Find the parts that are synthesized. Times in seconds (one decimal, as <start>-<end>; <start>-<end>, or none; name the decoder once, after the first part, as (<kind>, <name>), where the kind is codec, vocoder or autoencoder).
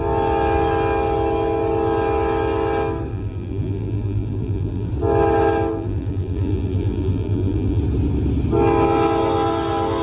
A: 3.1-4.9 (vocoder, BigVGAN v2); 5.7-7.8